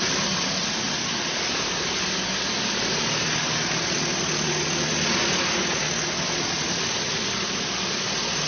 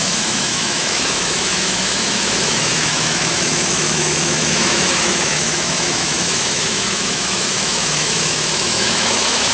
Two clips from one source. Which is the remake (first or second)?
second